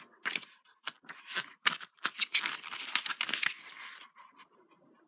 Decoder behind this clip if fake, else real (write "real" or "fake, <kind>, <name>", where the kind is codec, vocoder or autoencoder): real